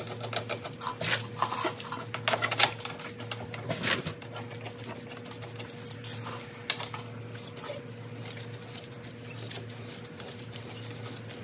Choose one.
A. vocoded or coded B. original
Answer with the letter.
B